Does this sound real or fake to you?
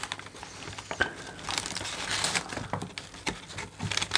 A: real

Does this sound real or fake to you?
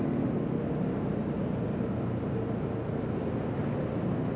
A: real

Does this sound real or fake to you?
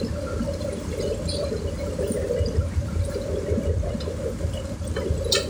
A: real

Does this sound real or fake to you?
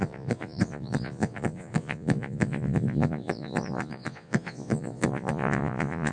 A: fake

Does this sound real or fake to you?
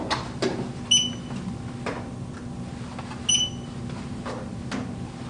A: real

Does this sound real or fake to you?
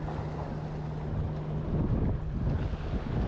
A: real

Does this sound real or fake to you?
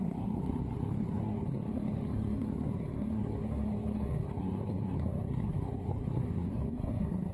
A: fake